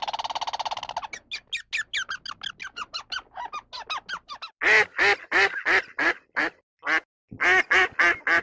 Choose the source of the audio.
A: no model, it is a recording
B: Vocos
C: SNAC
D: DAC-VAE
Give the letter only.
A